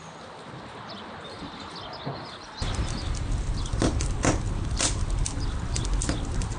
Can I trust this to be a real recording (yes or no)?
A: yes